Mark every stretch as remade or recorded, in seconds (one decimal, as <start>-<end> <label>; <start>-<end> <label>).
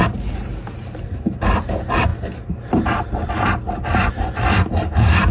0.0-2.1 remade; 2.1-4.1 recorded; 4.1-5.3 remade